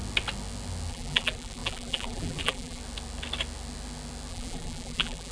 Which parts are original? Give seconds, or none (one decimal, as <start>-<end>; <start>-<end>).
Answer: 0.0-0.9; 2.8-4.3

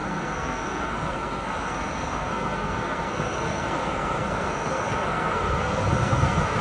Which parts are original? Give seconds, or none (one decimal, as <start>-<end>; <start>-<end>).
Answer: none

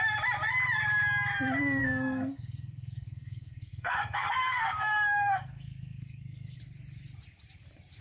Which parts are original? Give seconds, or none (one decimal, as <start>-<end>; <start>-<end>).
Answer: 0.0-1.8; 6.6-8.0

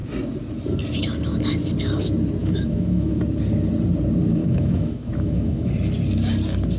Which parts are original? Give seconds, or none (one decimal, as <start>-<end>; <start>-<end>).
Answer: 0.0-2.4; 3.2-4.4; 5.7-6.8

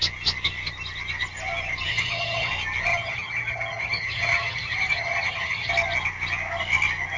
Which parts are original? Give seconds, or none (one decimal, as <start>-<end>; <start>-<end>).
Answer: 0.0-1.9; 2.5-2.9; 5.7-7.2

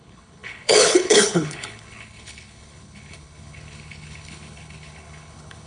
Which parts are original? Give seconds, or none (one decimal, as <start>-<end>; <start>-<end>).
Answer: none

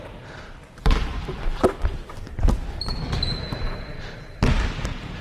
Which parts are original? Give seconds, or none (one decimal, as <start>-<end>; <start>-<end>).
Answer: none